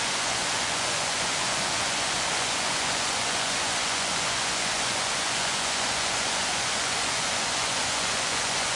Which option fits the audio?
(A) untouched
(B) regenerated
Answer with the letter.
B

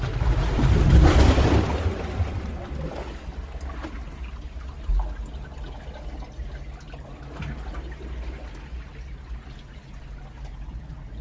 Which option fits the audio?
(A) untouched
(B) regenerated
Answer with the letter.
A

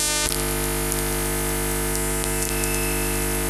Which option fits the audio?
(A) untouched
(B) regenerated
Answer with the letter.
A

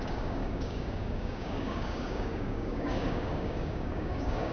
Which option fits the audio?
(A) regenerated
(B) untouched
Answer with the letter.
A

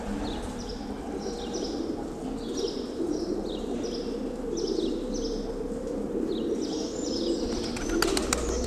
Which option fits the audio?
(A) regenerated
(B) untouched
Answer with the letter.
B